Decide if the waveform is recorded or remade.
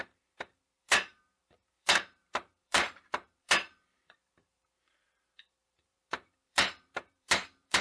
remade